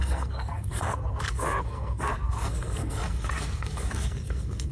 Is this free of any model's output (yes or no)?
no